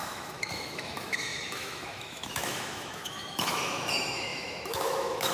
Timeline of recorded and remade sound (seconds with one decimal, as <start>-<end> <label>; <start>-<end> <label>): 0.0-5.3 remade